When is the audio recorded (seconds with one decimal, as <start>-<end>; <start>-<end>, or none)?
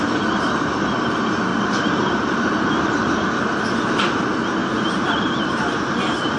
0.0-1.5; 2.7-4.6; 5.5-6.4